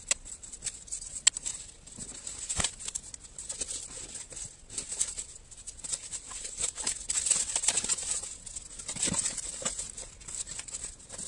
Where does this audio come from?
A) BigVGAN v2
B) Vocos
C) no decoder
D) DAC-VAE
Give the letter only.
C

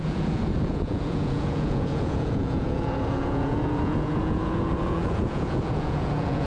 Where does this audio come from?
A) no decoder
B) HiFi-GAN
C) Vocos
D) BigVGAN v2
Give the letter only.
C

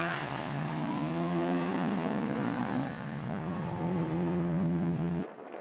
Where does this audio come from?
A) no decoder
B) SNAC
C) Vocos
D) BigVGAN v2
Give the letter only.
C